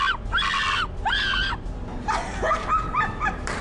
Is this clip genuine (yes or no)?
yes